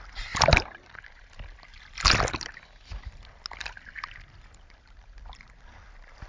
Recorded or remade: recorded